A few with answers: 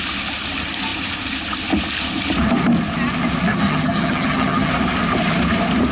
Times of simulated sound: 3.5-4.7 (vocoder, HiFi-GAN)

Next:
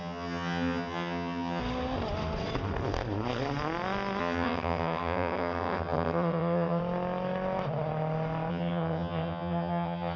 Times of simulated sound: 0.0-1.6 (vocoder, HiFi-GAN); 4.2-6.8; 8.5-10.2

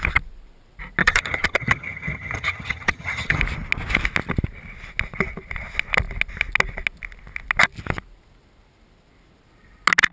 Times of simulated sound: 1.0-3.4 (vocoder, HiFi-GAN)

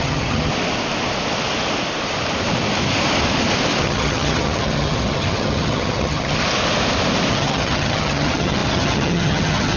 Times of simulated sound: 0.0-0.5 (vocoder, HiFi-GAN); 3.8-6.4; 7.3-9.8

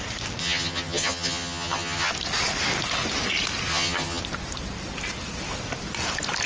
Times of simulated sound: 0.4-2.1 (vocoder, HiFi-GAN); 3.7-4.2

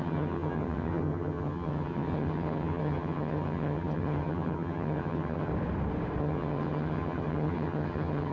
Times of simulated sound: 0.0-5.5 (vocoder, HiFi-GAN); 6.2-8.3

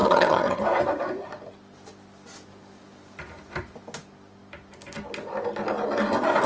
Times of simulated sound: 0.0-0.6 (vocoder, HiFi-GAN)

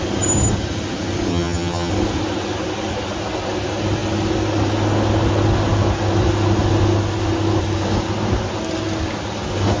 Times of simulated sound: 1.3-1.9 (vocoder, HiFi-GAN)